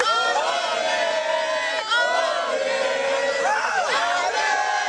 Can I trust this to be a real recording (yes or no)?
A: yes